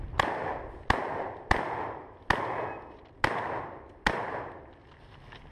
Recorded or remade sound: recorded